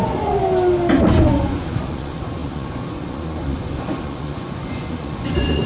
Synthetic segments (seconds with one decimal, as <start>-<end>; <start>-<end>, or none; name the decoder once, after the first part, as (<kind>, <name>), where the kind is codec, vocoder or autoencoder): 0.0-0.4 (vocoder, Vocos); 1.2-5.7